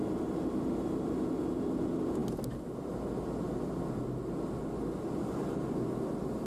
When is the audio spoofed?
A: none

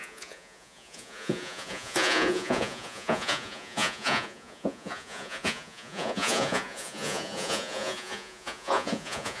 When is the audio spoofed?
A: 0.0-9.4 (vocoder, Vocos)

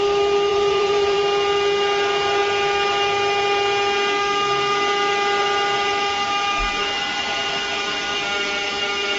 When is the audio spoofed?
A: 0.5-1.2 (vocoder, Vocos)

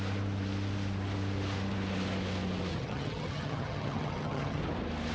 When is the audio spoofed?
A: 2.7-4.6 (vocoder, HiFi-GAN)

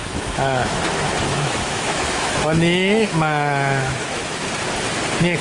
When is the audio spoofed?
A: 0.0-0.8 (autoencoder, DAC-VAE); 1.3-4.5

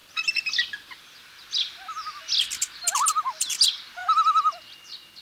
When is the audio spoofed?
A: none

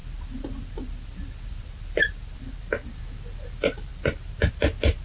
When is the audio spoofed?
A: 0.0-3.0 (vocoder, BigVGAN v2); 3.9-4.5